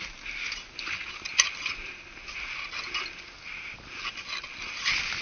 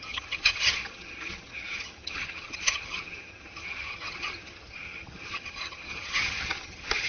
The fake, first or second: second